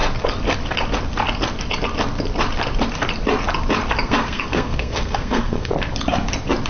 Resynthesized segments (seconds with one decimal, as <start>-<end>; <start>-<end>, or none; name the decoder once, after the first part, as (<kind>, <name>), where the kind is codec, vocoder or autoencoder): 4.0-5.7 (codec, SNAC)

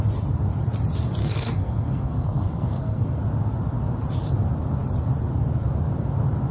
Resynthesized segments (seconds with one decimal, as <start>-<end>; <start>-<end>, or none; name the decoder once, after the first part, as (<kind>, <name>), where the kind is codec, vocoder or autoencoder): 1.2-3.2 (codec, SNAC)

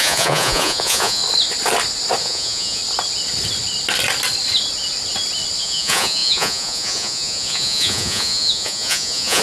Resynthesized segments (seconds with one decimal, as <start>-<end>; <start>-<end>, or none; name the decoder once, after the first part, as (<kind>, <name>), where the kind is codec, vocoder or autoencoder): 0.0-1.2 (vocoder, Vocos); 2.2-2.8; 5.6-9.4

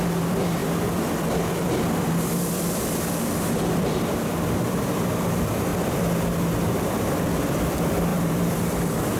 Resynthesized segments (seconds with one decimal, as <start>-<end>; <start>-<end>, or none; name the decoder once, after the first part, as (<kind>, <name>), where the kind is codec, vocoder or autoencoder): 0.0-5.7 (vocoder, BigVGAN v2); 6.9-9.2

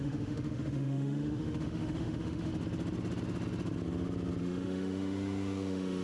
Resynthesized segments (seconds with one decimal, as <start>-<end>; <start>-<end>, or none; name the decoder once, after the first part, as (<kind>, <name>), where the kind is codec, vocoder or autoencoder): 0.0-2.5 (autoencoder, DAC-VAE); 4.4-6.0

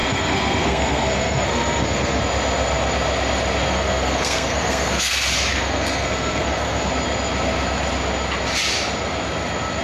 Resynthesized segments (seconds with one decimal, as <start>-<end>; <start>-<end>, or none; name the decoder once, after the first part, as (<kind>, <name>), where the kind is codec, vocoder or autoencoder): 0.0-2.2 (codec, SNAC); 3.7-5.1; 5.5-6.9

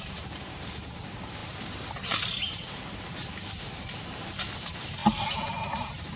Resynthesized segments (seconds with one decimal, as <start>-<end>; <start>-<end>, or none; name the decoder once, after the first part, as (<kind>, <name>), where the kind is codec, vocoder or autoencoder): 0.0-5.0 (vocoder, BigVGAN v2); 5.6-6.2